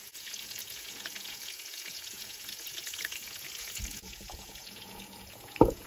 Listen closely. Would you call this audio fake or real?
fake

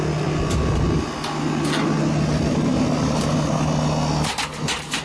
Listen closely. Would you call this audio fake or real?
real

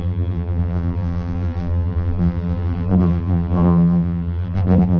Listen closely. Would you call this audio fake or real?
fake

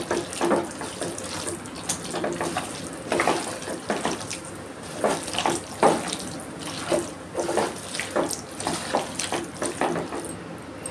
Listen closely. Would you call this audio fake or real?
real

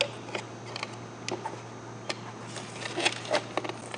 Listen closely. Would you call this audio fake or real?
real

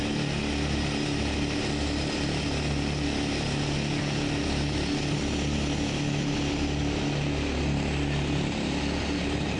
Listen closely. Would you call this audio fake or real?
real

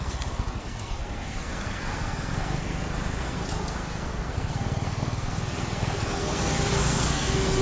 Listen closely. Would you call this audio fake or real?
fake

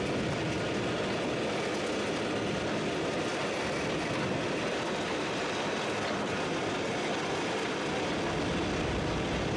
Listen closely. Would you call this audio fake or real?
real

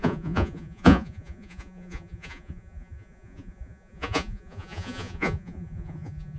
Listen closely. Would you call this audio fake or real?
fake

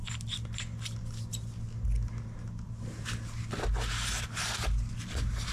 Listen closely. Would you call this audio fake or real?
real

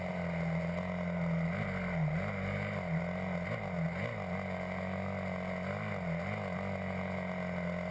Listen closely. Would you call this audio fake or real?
real